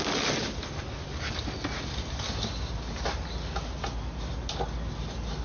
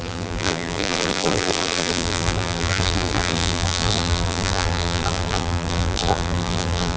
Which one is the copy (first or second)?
second